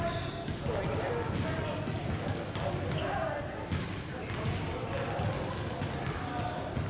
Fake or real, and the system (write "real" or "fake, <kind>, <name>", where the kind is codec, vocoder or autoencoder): real